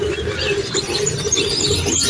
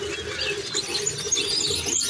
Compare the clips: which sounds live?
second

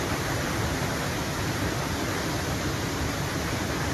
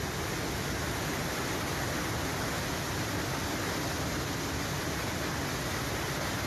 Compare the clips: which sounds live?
second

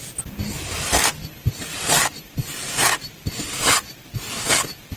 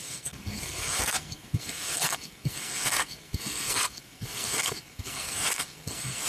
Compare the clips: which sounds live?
first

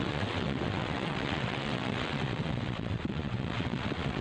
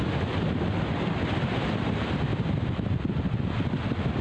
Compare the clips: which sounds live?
second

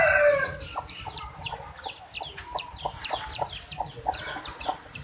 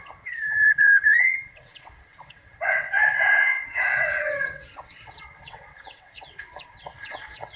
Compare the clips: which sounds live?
first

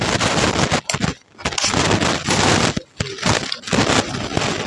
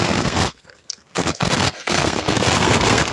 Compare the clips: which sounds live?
first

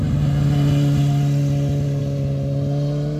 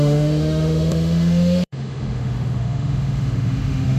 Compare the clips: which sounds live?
first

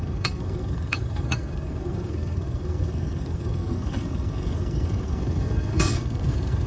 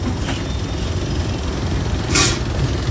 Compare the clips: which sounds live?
second